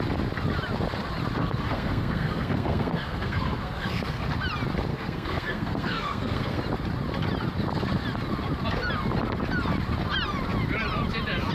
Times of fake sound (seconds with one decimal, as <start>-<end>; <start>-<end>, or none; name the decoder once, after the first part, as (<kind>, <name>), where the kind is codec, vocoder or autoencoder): 1.4-4.2 (codec, SNAC); 4.9-6.6